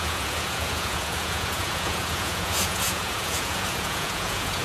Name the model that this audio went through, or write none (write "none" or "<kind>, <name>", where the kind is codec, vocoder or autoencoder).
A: vocoder, Vocos